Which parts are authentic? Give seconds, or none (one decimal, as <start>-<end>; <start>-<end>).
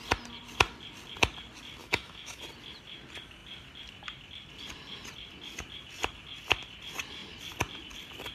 0.0-1.8; 2.4-8.3